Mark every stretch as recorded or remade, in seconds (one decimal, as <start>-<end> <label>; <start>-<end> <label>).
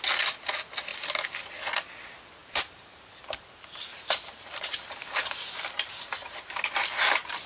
0.0-0.9 recorded; 0.9-1.5 remade; 1.5-2.4 recorded; 2.4-6.5 remade; 6.5-7.5 recorded